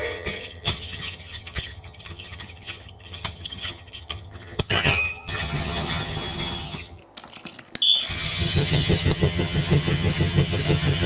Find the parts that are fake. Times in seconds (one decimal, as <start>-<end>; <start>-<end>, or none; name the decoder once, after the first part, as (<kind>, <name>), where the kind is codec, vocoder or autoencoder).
0.0-7.0 (vocoder, HiFi-GAN); 8.1-11.1